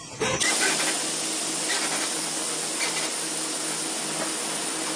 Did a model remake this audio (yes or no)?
no